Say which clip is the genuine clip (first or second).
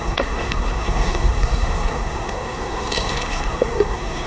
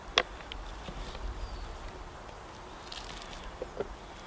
second